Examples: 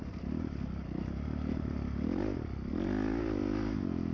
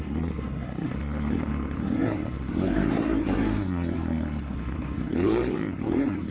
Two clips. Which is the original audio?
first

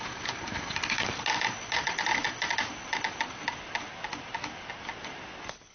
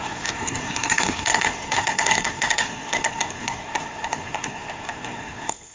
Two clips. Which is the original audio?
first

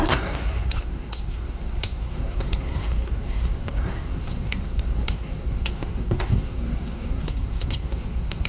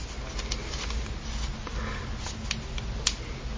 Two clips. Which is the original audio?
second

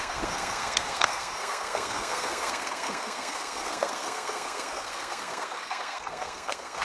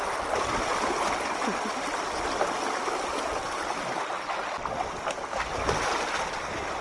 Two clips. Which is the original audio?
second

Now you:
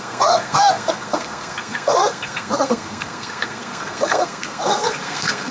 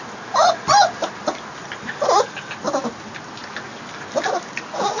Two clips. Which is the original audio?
second